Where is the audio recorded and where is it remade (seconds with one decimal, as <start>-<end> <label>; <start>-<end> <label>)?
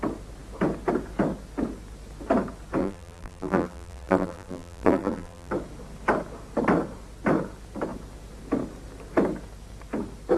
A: 0.0-2.8 recorded; 2.8-5.5 remade; 5.5-10.4 recorded